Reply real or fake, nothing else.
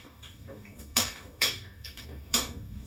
fake